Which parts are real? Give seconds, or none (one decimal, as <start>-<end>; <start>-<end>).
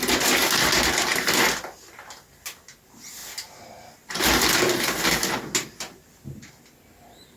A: 0.0-7.4